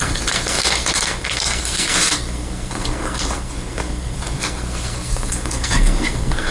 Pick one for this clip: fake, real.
fake